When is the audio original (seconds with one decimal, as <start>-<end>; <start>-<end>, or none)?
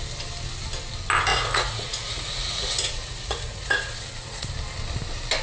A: 0.0-1.3; 4.5-5.4